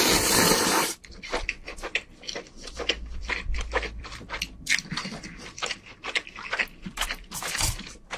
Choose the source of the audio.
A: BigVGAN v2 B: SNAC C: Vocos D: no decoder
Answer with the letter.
A